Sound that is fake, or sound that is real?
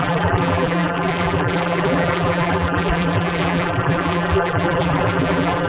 fake